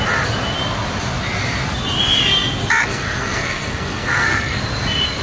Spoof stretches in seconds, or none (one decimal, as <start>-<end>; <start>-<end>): 2.8-4.6